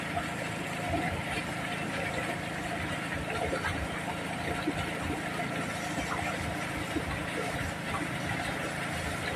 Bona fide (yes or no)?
yes